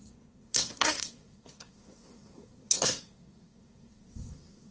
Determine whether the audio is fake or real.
fake